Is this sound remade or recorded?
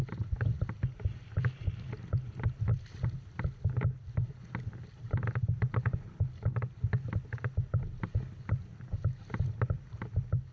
recorded